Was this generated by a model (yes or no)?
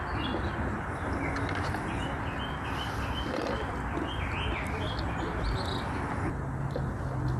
no